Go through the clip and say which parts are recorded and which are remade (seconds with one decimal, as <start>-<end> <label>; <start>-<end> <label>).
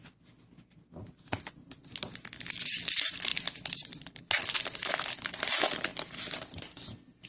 0.0-7.3 recorded